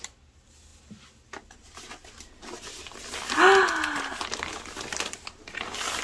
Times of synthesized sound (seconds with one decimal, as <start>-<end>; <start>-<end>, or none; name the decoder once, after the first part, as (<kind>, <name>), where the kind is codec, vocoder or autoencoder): none